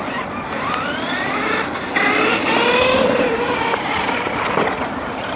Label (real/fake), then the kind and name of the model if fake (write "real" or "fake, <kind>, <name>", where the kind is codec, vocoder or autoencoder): real